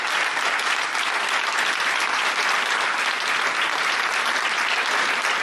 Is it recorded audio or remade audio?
recorded